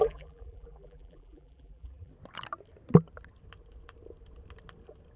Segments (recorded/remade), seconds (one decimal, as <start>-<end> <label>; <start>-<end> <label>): 0.0-2.1 remade; 2.1-5.2 recorded